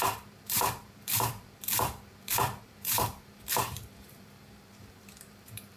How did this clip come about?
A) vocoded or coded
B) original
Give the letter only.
A